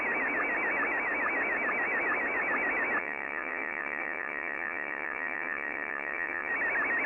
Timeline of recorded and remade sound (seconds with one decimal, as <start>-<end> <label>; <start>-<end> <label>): 0.0-3.0 recorded; 3.0-6.5 remade; 6.5-7.1 recorded